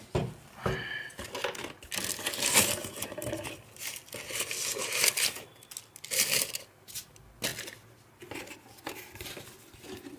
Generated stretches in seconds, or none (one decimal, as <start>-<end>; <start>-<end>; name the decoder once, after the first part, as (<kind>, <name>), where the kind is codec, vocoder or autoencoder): none